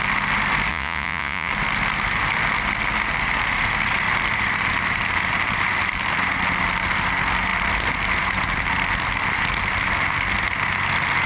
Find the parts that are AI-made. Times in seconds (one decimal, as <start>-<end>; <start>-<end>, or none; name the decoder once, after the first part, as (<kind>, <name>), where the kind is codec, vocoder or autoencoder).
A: 0.7-1.5 (vocoder, Vocos)